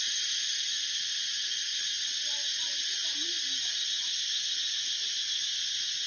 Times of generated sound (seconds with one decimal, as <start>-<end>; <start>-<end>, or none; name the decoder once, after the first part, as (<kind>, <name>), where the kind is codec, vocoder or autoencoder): none